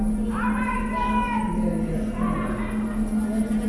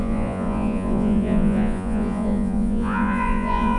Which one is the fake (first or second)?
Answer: second